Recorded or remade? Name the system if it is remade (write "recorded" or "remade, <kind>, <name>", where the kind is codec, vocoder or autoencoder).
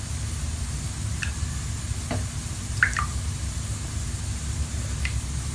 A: recorded